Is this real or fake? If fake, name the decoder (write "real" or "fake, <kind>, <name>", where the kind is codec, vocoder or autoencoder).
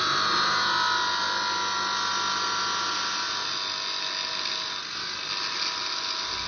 real